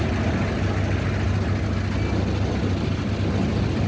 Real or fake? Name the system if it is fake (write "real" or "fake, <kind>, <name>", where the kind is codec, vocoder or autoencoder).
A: real